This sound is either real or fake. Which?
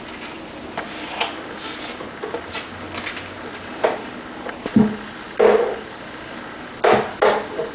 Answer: real